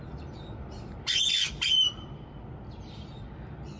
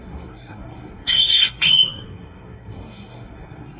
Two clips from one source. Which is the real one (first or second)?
first